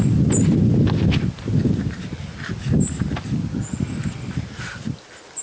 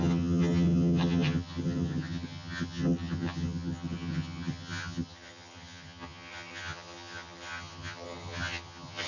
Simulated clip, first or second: second